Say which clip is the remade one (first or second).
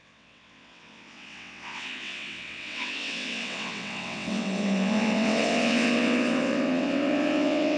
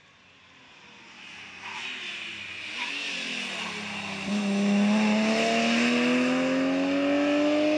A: first